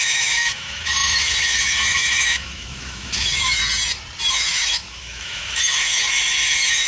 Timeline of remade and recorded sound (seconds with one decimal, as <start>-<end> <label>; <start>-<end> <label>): 0.0-3.6 remade; 3.6-4.3 recorded; 4.3-6.9 remade

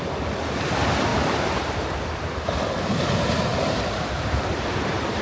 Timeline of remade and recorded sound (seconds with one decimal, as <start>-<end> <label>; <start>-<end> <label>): 0.0-1.1 recorded; 1.1-2.8 remade; 2.8-3.5 recorded; 3.5-5.2 remade

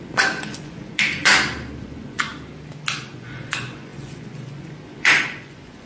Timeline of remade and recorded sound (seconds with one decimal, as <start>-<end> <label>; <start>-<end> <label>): 0.0-1.3 remade; 1.3-1.8 recorded; 1.8-2.3 remade; 2.3-3.1 recorded; 3.1-5.9 remade